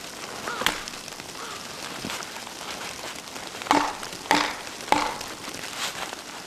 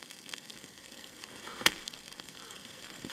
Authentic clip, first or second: first